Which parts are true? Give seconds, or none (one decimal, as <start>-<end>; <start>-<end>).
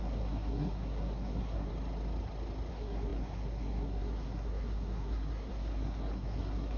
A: 1.7-2.7